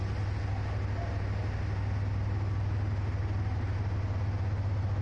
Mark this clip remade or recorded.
recorded